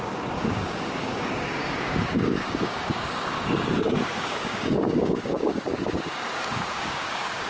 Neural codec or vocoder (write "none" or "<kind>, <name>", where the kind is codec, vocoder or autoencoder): codec, DAC